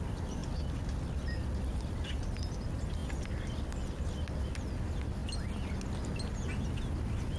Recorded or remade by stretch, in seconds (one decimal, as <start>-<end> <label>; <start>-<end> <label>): 0.0-7.4 recorded

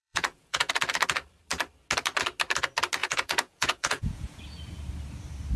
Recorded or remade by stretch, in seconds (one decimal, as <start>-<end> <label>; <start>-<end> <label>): 0.0-0.7 remade; 0.7-3.0 recorded; 3.0-4.4 remade; 4.4-5.6 recorded

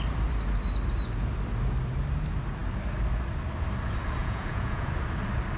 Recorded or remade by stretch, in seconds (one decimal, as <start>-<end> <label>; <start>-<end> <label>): 0.0-4.2 recorded; 4.2-4.9 remade; 4.9-5.6 recorded

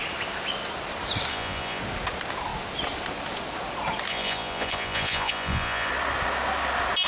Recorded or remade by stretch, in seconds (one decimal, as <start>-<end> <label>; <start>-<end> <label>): 0.0-1.3 recorded; 1.3-1.8 remade; 1.8-4.1 recorded; 4.1-5.9 remade; 5.9-7.1 recorded

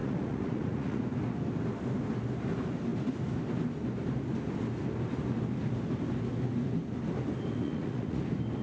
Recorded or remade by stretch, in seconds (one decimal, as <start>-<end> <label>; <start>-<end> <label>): 0.0-1.0 remade; 1.0-7.6 recorded; 7.6-8.2 remade; 8.2-8.6 recorded

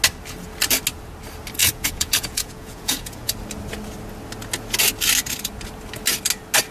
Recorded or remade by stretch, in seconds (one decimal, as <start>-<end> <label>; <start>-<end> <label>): 0.0-1.6 recorded; 1.6-3.3 remade; 3.3-6.7 recorded

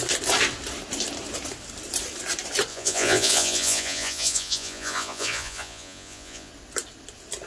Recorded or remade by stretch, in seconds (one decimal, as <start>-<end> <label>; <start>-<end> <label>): 0.0-2.7 recorded; 2.7-6.5 remade; 6.5-7.5 recorded

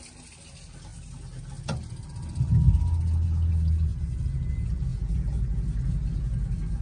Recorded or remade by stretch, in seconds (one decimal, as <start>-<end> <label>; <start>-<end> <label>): 0.0-4.9 recorded; 4.9-5.4 remade; 5.4-6.8 recorded